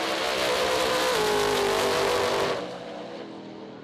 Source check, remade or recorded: recorded